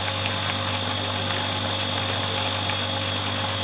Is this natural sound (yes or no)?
no